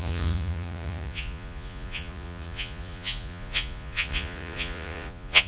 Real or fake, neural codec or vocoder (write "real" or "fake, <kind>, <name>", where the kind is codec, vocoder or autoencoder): fake, vocoder, Vocos